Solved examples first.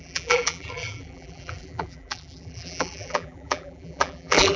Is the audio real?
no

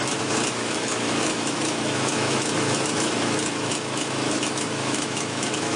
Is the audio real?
no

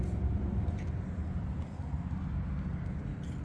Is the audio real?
yes